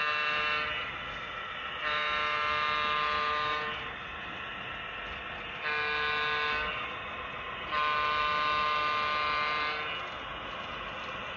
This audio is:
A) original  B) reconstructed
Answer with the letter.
A